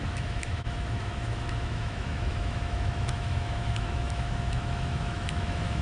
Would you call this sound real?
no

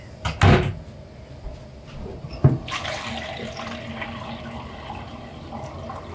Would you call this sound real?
yes